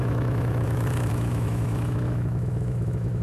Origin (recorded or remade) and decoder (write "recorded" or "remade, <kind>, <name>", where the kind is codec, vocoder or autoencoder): remade, autoencoder, DAC-VAE